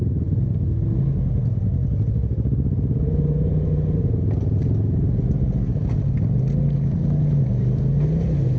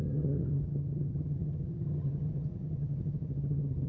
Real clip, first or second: first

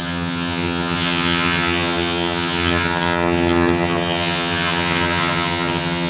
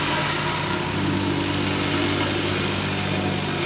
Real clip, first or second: second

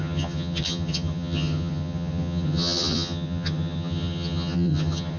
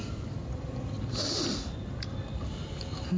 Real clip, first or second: second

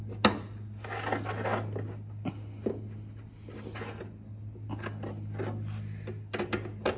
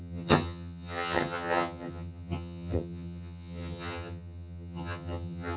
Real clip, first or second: first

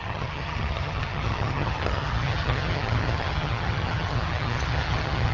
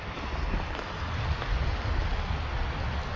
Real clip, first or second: second